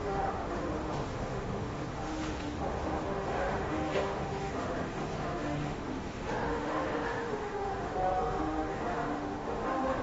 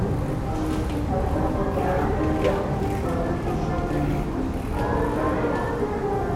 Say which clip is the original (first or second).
second